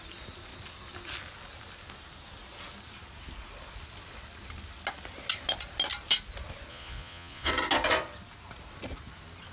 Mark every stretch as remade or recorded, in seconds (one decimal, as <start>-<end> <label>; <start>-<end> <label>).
0.0-6.7 recorded; 6.7-7.5 remade; 7.5-9.5 recorded